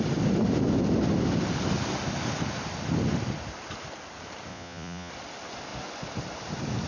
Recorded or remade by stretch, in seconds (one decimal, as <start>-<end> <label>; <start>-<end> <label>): 0.0-4.5 recorded; 4.5-5.1 remade; 5.1-6.9 recorded